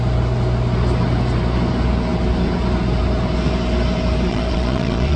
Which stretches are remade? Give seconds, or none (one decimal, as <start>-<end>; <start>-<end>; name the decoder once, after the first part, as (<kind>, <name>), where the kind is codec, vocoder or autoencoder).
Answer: 4.3-5.2 (vocoder, Vocos)